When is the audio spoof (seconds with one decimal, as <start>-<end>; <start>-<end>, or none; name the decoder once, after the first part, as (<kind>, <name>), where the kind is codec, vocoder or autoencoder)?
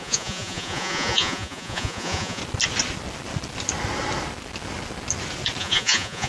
0.0-2.4 (vocoder, Vocos); 5.6-6.3